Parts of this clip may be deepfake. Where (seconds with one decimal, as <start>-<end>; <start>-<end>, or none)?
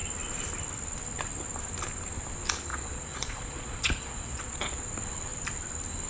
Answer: 2.7-4.8